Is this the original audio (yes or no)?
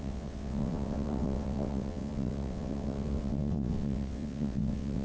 no